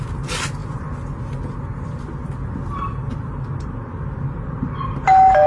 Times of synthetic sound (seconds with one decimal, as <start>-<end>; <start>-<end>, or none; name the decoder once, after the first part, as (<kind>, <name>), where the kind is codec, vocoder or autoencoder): none